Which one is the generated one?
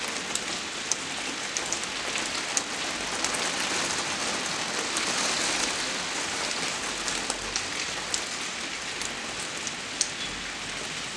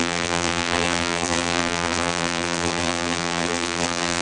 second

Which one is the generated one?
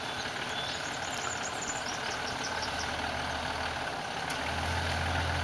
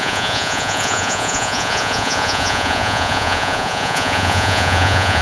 second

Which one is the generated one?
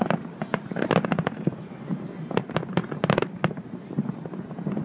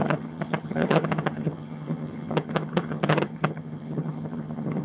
second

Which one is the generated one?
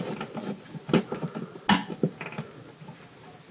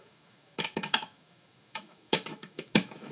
second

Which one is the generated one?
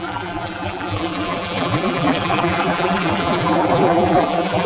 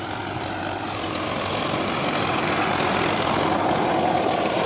first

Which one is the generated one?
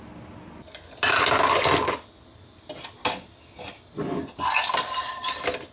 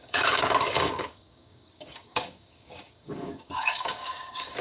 second